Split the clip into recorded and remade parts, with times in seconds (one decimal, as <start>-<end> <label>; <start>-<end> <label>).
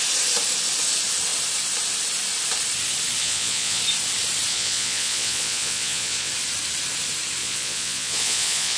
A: 0.0-3.2 recorded; 3.2-3.8 remade; 3.8-4.5 recorded; 4.5-6.3 remade; 6.3-7.4 recorded; 7.4-8.8 remade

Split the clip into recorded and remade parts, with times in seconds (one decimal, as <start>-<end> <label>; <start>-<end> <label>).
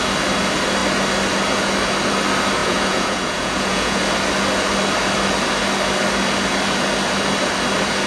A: 0.0-2.6 recorded; 2.6-4.0 remade; 4.0-8.1 recorded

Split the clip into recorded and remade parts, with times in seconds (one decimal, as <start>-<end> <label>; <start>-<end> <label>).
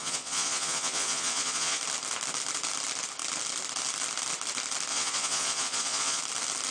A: 0.0-1.8 remade; 1.8-4.9 recorded; 4.9-6.2 remade; 6.2-6.7 recorded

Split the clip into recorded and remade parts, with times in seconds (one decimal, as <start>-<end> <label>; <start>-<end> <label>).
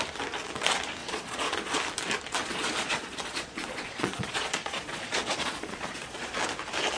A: 0.0-1.0 recorded; 1.0-1.8 remade; 1.8-2.4 recorded; 2.4-6.3 remade; 6.3-7.0 recorded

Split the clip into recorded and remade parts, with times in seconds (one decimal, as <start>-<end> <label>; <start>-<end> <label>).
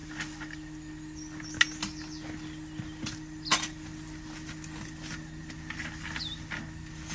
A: 0.0-7.1 recorded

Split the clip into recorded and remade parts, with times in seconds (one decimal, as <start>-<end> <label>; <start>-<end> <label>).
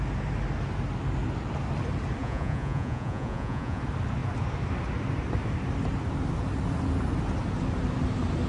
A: 0.0-2.2 recorded; 2.2-3.8 remade; 3.8-8.5 recorded